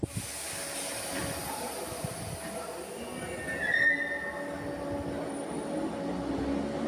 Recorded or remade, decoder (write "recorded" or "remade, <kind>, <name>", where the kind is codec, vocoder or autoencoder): recorded